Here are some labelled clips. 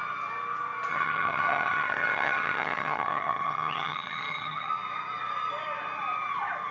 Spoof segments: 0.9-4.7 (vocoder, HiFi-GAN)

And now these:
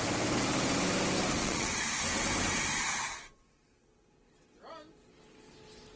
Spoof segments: 1.4-1.9 (vocoder, Vocos)

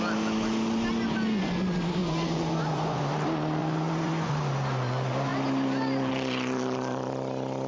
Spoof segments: 2.0-3.0 (vocoder, Vocos); 3.6-4.3

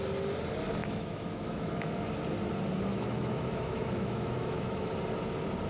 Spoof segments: 0.8-2.1 (autoencoder, DAC-VAE); 2.9-4.9

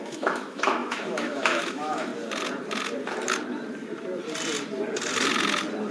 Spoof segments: 0.0-2.1 (autoencoder, DAC-VAE)

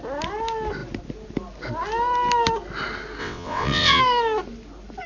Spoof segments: 3.2-4.0 (vocoder, WaveNeXt)

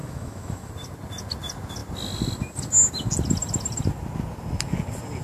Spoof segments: 0.0-0.7 (autoencoder, DAC-VAE)

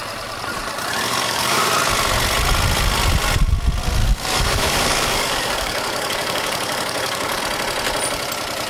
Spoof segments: 1.1-1.7 (codec, DAC); 4.0-7.4